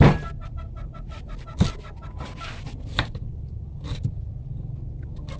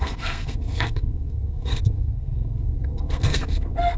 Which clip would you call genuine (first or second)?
first